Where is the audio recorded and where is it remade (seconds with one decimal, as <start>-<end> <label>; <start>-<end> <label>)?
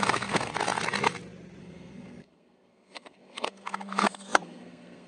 0.0-0.5 remade; 0.5-1.6 recorded; 1.6-5.1 remade